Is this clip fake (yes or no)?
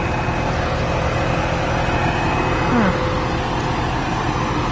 no